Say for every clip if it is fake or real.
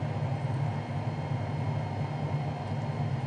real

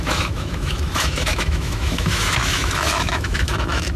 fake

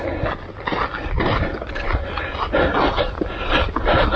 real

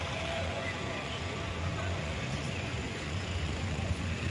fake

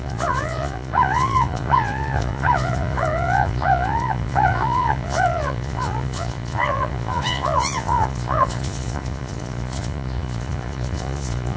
fake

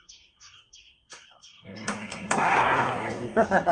fake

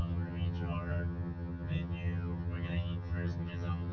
fake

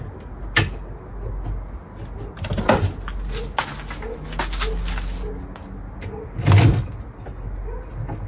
real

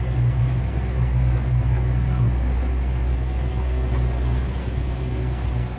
fake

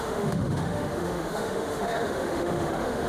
fake